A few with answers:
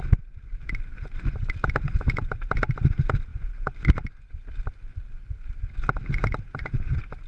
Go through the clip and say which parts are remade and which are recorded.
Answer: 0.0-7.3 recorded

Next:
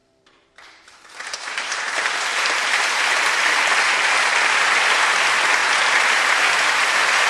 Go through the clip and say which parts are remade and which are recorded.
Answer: 0.0-3.0 remade; 3.0-5.6 recorded; 5.6-7.3 remade

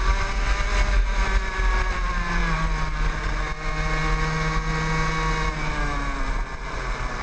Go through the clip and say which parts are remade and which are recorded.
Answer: 0.0-7.2 recorded